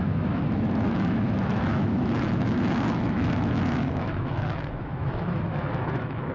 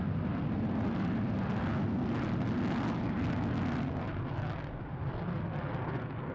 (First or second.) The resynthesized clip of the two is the first